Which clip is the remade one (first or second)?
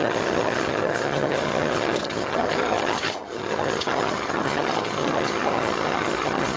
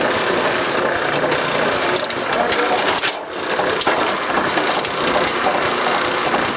first